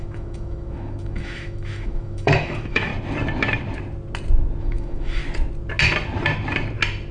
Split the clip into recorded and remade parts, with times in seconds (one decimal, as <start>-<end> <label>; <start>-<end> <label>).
0.0-2.9 remade; 2.9-4.6 recorded; 4.6-5.2 remade; 5.2-7.1 recorded